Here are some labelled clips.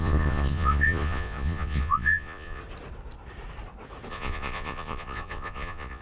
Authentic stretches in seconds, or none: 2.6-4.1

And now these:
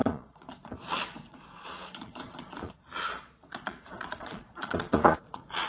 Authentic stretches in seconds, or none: none

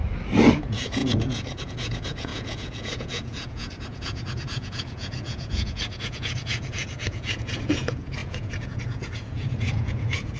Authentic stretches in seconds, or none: 0.0-0.6

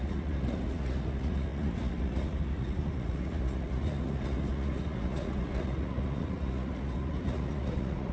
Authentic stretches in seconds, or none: none

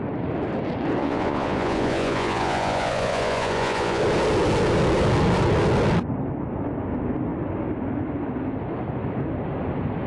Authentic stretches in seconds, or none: 0.0-1.0; 4.0-10.1